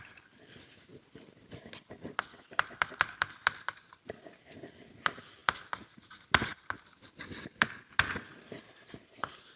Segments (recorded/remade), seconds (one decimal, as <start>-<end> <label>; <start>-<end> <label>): 0.0-9.6 recorded